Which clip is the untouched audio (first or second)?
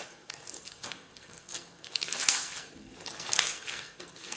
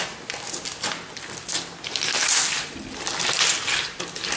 second